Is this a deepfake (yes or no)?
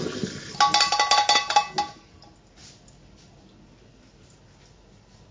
no